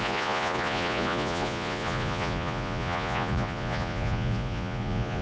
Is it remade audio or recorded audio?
remade